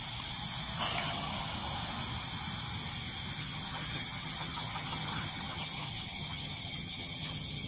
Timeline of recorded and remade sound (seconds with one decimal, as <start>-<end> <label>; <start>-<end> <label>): 0.0-1.0 recorded; 1.0-1.5 remade; 1.5-3.3 recorded; 3.3-7.7 remade